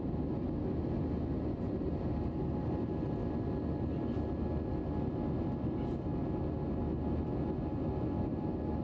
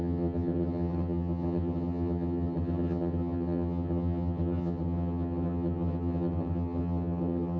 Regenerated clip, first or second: second